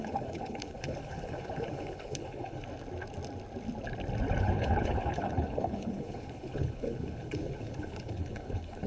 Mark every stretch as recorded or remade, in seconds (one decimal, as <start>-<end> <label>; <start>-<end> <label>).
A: 0.0-2.6 remade; 2.6-4.4 recorded; 4.4-8.9 remade